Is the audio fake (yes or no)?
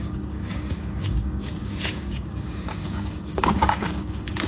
yes